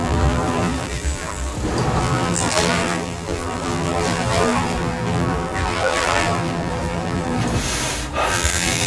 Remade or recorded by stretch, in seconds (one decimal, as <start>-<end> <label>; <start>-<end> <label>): 0.0-1.5 remade; 1.5-2.0 recorded; 2.0-7.4 remade; 7.4-8.3 recorded; 8.3-8.9 remade